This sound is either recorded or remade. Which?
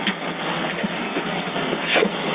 remade